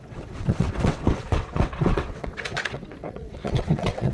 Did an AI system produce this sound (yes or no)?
yes